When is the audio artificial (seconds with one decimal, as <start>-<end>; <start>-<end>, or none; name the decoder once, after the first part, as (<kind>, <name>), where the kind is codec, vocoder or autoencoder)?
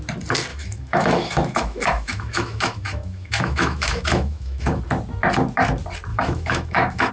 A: 0.5-4.8 (autoencoder, DAC-VAE); 6.1-7.1